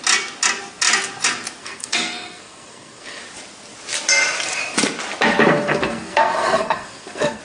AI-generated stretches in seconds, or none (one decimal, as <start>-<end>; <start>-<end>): 1.6-3.2; 5.5-7.4